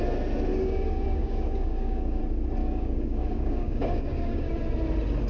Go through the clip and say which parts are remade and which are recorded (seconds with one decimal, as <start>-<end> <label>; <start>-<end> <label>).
0.0-0.5 recorded; 0.5-2.2 remade; 2.2-2.6 recorded; 2.6-4.5 remade; 4.5-5.3 recorded